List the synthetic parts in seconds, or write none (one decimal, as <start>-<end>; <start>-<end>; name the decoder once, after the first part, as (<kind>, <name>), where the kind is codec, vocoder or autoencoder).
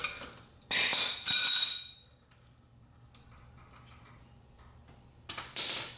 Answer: none